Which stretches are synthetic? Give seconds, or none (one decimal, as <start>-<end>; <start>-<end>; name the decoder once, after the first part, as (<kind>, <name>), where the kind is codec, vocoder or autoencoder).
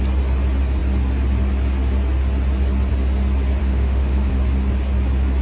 3.6-4.3 (autoencoder, DAC-VAE)